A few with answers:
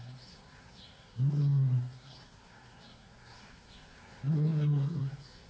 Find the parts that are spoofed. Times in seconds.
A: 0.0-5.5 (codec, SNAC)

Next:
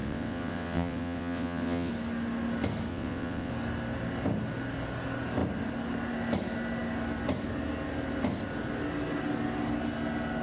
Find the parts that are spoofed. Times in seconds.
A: 0.0-1.9 (vocoder, WaveNeXt); 2.9-3.5

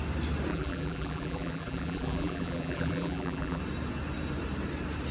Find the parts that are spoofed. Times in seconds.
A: 0.5-3.6 (vocoder, BigVGAN v2)